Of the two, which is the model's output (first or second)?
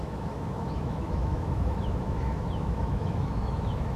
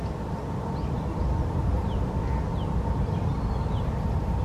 first